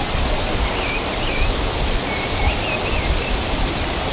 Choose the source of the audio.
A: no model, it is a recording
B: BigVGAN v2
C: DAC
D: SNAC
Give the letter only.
A